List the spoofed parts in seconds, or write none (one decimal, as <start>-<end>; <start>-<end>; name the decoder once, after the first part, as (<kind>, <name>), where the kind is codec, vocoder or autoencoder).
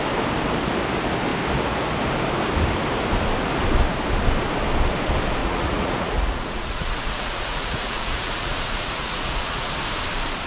5.4-9.7 (vocoder, Vocos)